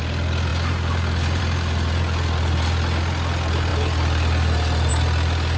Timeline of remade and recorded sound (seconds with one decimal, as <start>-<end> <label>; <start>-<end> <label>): 0.0-5.6 recorded